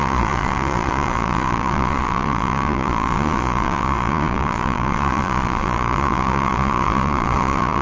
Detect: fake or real fake